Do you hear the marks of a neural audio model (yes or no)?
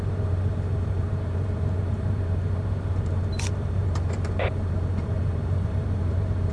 yes